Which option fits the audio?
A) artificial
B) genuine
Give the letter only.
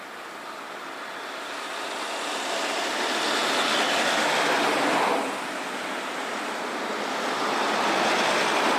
B